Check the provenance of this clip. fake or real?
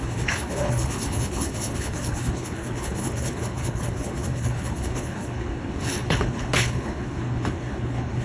fake